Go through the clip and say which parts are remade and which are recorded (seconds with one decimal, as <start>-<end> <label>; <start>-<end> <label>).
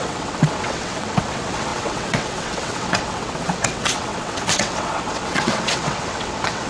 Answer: 0.0-6.7 remade